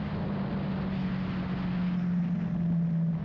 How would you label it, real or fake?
real